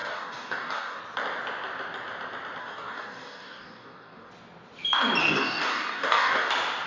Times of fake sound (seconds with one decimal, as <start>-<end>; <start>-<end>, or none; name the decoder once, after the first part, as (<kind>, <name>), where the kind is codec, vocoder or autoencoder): 0.0-1.0 (codec, DAC); 2.6-4.3; 5.2-6.5